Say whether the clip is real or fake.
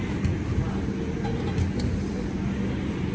real